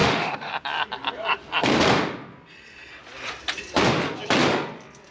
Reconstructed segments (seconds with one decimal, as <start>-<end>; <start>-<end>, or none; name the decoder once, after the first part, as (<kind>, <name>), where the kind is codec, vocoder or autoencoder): 0.0-0.5 (autoencoder, DAC-VAE)

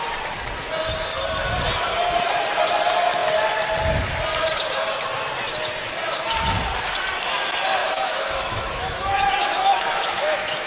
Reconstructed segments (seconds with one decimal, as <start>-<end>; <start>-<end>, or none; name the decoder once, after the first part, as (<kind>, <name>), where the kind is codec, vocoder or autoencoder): 7.8-10.7 (autoencoder, DAC-VAE)